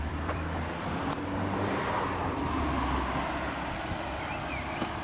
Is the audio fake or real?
fake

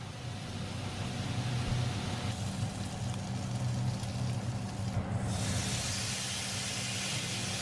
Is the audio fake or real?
real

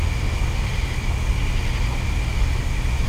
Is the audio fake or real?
real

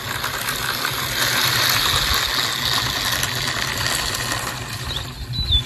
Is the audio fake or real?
real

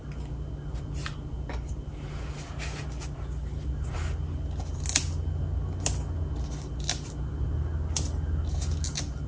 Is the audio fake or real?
real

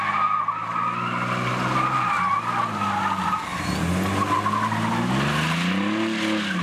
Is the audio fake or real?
real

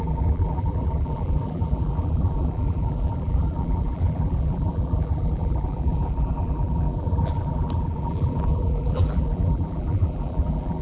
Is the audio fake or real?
fake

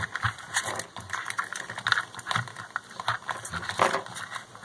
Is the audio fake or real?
real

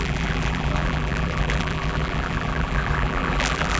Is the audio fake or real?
fake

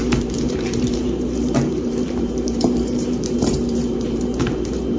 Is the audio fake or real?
fake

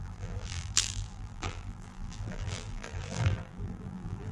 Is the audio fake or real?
fake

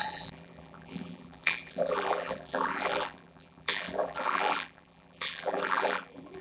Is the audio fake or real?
fake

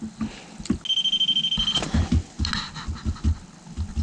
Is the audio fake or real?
real